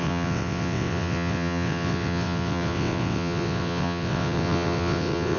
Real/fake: fake